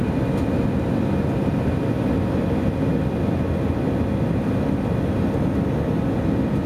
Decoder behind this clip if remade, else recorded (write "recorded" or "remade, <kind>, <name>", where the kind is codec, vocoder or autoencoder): recorded